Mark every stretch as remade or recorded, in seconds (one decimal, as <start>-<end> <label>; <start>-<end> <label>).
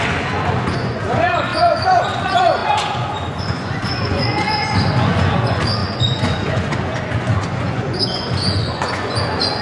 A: 0.0-9.6 remade